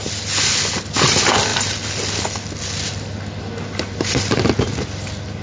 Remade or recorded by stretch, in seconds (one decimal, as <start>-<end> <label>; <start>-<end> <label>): 0.0-5.4 recorded